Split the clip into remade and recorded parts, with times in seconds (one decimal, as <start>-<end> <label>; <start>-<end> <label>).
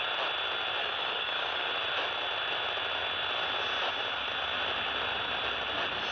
0.0-0.8 recorded; 0.8-1.7 remade; 1.7-6.1 recorded